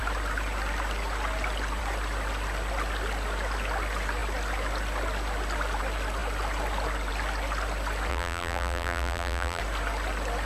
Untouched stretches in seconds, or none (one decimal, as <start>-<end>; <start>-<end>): 0.0-8.1; 9.6-10.5

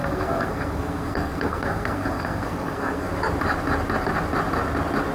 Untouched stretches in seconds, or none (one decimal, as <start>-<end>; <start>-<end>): 3.1-5.1

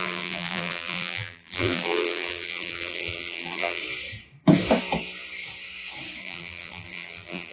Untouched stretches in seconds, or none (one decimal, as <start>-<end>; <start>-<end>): 3.8-6.2

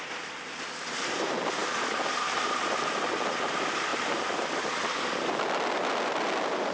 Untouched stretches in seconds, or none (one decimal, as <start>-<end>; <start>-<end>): none

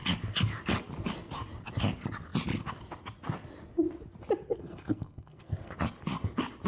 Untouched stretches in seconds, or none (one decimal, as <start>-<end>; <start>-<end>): 0.0-4.5; 5.7-6.7

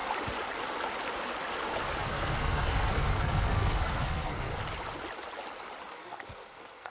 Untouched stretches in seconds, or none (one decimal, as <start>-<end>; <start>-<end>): 0.0-2.0; 4.5-5.9

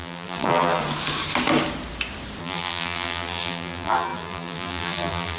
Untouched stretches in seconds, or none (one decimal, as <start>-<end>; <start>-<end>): 0.8-2.4